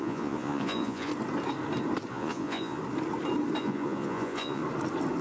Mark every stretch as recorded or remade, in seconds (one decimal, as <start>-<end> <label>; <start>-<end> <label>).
0.0-1.1 remade; 1.1-2.1 recorded; 2.1-2.8 remade; 2.8-3.6 recorded; 3.6-4.6 remade; 4.6-5.2 recorded